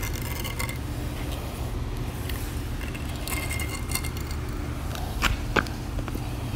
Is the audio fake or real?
real